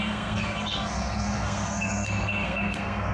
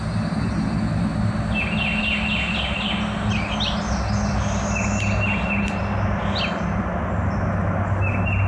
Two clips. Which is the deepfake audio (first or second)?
first